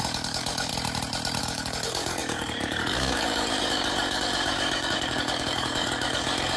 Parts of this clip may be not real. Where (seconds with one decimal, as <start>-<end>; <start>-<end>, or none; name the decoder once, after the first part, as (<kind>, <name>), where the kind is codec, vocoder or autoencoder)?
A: 0.0-0.7 (codec, DAC); 1.4-6.6